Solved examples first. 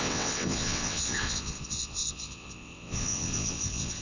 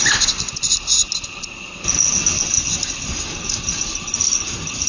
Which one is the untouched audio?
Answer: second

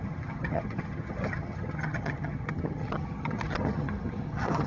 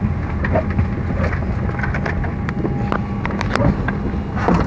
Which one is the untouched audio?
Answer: second